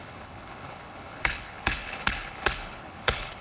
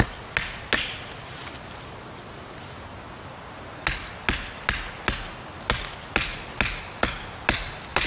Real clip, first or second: second